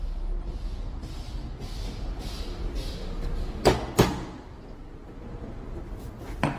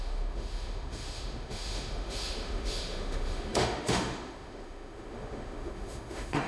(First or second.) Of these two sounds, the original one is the first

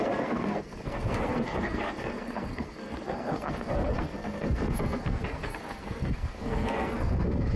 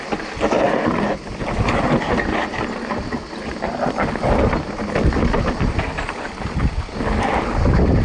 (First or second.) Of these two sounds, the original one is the second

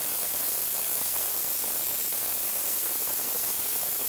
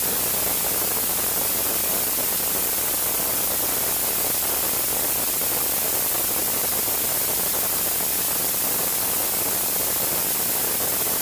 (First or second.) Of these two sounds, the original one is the second